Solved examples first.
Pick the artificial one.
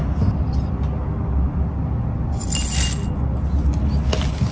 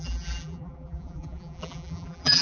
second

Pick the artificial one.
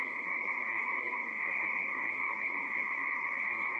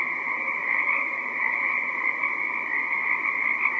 first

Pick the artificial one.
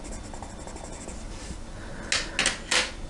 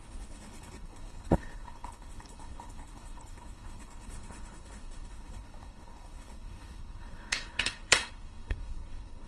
second